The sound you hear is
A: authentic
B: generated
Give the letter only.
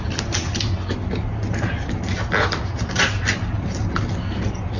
A